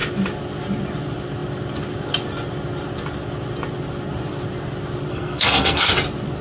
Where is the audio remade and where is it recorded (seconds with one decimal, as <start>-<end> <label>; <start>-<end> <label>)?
0.0-5.1 recorded; 5.1-5.9 remade; 5.9-6.4 recorded